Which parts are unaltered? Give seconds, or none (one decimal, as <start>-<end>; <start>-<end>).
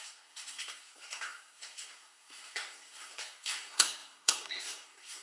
none